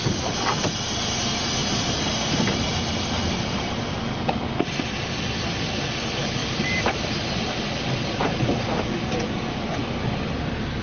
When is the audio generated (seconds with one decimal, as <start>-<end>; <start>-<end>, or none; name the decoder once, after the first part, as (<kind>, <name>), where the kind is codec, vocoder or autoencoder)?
1.6-4.0 (vocoder, BigVGAN v2); 6.4-8.2